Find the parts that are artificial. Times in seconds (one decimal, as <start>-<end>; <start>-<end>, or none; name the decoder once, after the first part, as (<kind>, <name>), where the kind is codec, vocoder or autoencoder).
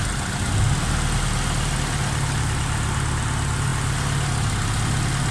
none